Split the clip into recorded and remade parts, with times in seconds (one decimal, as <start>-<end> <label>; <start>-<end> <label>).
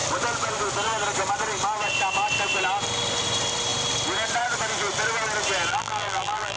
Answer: 0.0-5.7 recorded; 5.7-6.6 remade